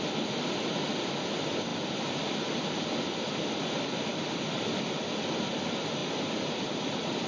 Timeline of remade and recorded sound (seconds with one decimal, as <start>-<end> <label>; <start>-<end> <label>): 0.0-1.7 remade; 1.7-3.1 recorded; 3.1-4.1 remade; 4.1-4.7 recorded; 4.7-6.0 remade; 6.0-6.6 recorded; 6.6-7.3 remade